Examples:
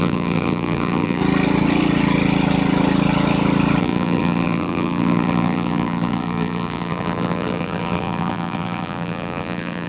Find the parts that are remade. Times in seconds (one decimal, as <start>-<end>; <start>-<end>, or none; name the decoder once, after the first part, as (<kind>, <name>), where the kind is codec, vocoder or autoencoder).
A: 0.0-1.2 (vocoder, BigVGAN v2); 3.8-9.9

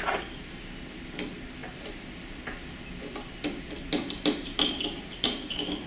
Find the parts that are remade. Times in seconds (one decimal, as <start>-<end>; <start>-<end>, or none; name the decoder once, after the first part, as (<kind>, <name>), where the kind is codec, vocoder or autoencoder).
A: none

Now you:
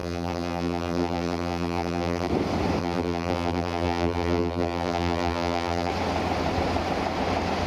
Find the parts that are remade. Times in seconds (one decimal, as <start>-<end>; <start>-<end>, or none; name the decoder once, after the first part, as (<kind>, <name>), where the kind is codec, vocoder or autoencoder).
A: 0.0-2.3 (vocoder, BigVGAN v2); 2.8-5.9

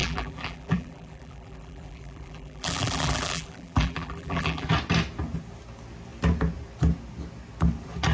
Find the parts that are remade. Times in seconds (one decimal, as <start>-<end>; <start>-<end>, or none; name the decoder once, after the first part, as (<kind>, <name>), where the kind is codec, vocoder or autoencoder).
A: 0.0-4.7 (vocoder, BigVGAN v2)

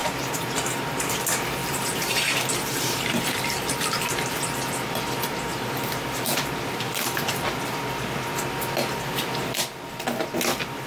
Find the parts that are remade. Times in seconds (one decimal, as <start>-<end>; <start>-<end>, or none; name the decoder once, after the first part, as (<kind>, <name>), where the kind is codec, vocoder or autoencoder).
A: 1.6-4.1 (vocoder, BigVGAN v2); 5.5-7.6